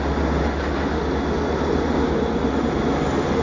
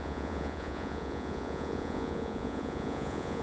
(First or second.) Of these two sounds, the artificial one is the second